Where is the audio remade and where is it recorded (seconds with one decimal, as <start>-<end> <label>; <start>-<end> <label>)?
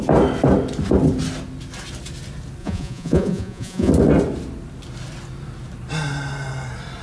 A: 0.0-2.6 recorded; 2.6-3.9 remade; 3.9-7.0 recorded